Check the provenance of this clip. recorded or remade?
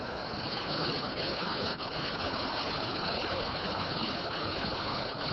remade